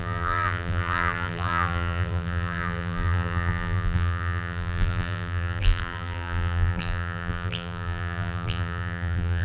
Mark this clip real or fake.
fake